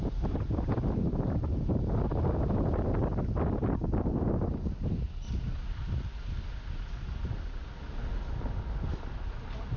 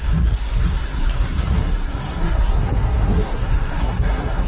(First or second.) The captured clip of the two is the first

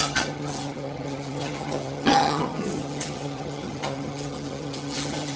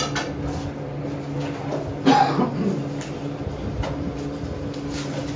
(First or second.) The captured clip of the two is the second